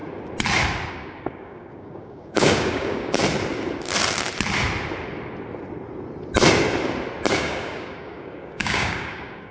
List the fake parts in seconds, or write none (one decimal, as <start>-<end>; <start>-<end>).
0.9-3.2; 7.3-9.5